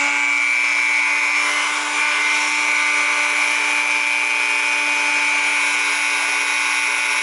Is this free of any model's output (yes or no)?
yes